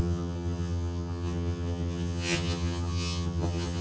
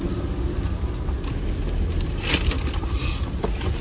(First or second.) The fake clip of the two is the first